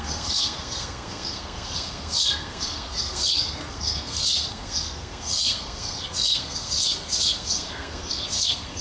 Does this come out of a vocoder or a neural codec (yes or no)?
yes